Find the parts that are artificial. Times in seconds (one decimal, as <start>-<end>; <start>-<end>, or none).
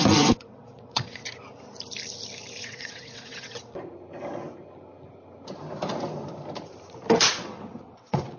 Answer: 0.0-1.2; 2.6-3.7; 7.4-8.4